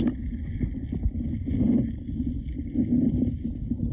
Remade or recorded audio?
recorded